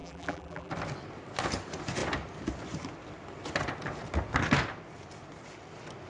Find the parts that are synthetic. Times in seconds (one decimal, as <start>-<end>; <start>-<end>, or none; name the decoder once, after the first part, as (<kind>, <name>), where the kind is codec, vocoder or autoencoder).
0.0-0.7 (vocoder, BigVGAN v2)